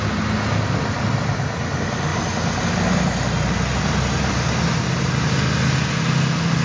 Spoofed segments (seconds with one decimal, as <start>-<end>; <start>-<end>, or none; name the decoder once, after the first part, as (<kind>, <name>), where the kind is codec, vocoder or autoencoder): none